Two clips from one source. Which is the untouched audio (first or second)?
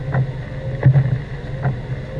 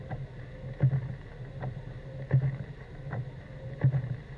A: first